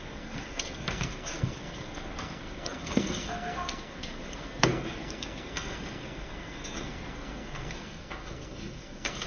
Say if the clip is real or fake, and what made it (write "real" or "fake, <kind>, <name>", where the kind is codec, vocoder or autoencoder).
fake, codec, SNAC